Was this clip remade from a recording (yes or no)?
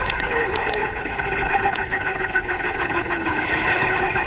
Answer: yes